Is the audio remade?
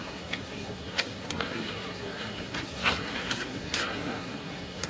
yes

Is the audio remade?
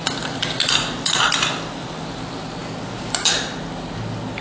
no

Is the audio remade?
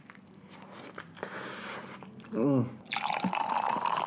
no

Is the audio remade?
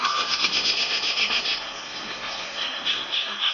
yes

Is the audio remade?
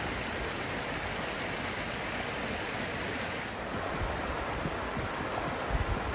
no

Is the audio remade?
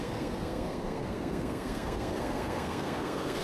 yes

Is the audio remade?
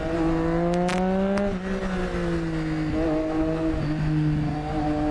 no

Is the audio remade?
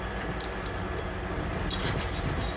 no